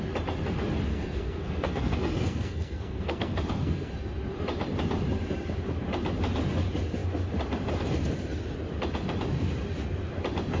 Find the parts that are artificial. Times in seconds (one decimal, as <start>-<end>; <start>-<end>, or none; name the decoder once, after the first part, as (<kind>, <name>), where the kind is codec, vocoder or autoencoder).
0.9-3.9 (codec, SNAC)